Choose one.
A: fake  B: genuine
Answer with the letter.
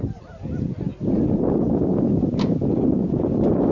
B